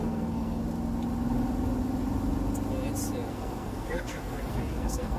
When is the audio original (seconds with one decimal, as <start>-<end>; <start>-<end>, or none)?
0.6-3.3

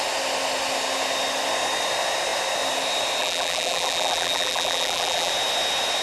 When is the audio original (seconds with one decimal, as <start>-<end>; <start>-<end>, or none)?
0.0-3.2; 5.3-6.0